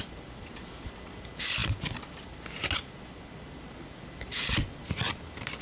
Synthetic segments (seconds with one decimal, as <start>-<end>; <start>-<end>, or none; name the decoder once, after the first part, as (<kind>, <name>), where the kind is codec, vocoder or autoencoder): none